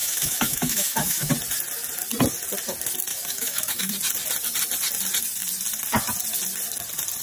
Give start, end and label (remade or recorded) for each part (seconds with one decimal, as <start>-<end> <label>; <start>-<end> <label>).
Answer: 0.0-1.3 remade; 1.3-3.1 recorded; 3.1-3.9 remade; 3.9-7.2 recorded

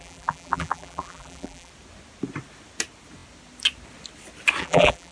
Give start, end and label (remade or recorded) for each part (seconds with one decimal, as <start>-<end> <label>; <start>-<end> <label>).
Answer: 0.0-1.7 remade; 1.7-4.6 recorded; 4.6-5.1 remade